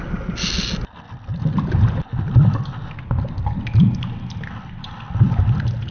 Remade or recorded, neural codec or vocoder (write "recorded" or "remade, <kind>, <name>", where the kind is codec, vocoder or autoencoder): recorded